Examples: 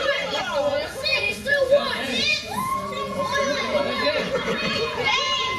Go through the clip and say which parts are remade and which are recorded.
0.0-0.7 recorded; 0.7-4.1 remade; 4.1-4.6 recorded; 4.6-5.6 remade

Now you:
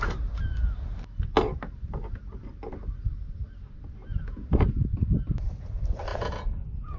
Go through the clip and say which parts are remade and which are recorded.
0.0-4.1 recorded; 4.1-4.7 remade; 4.7-6.1 recorded; 6.1-7.0 remade

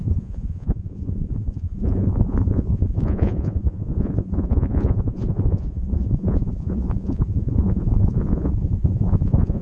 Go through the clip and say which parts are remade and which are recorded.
0.0-9.6 remade

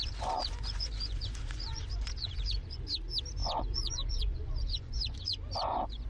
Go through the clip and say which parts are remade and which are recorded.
0.0-2.9 remade; 2.9-3.4 recorded; 3.4-6.1 remade